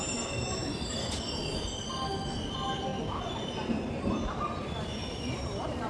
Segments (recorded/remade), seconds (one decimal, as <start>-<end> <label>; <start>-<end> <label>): 0.0-0.6 remade; 0.6-2.4 recorded; 2.4-2.9 remade; 2.9-5.1 recorded; 5.1-5.9 remade